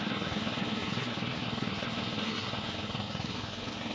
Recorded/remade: remade